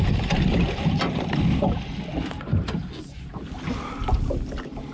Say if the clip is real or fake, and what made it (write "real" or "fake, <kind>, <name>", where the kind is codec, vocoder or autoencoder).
real